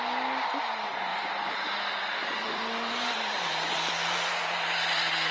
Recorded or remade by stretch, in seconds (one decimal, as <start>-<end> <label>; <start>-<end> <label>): 0.0-1.1 recorded; 1.1-4.3 remade; 4.3-5.3 recorded